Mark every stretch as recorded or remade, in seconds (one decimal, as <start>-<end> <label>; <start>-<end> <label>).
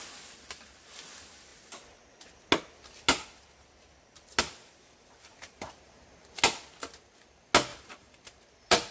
0.0-5.3 recorded; 5.3-6.2 remade; 6.2-7.7 recorded; 7.7-8.9 remade